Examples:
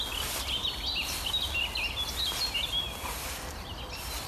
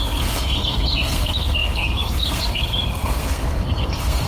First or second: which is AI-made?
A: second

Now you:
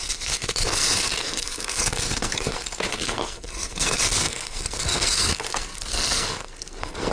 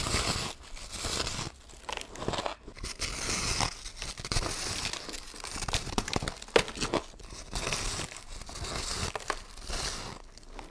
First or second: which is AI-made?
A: first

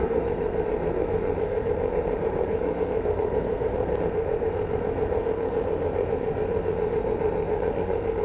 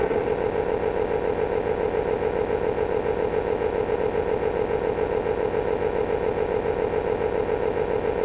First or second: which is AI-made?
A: first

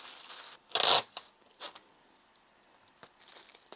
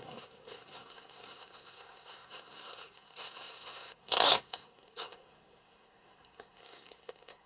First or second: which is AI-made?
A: second